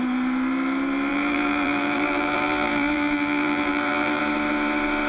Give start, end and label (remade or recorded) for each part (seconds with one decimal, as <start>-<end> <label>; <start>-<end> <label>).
0.0-1.1 recorded; 1.1-4.2 remade; 4.2-5.1 recorded